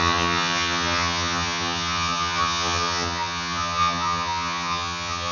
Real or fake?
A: fake